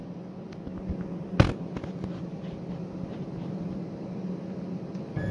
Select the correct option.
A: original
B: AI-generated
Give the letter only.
A